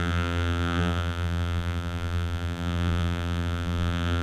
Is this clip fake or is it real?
fake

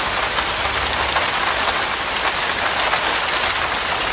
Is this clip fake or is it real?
real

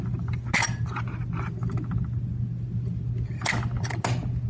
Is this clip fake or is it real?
real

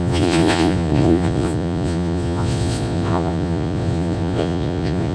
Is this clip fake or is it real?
fake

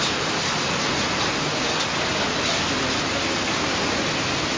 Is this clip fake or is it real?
real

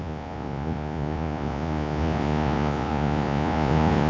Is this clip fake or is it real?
fake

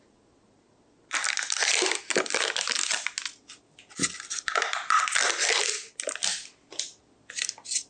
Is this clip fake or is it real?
real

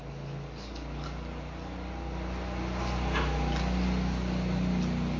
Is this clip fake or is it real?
real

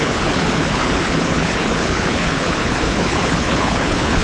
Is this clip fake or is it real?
fake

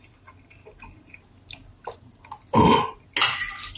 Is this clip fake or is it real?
real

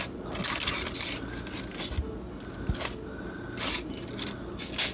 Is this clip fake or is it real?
real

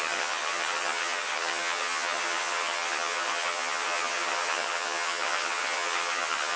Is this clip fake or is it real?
fake